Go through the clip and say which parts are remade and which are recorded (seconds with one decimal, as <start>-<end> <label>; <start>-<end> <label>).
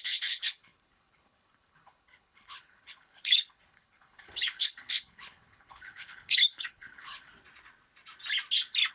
0.0-7.3 remade; 7.3-8.9 recorded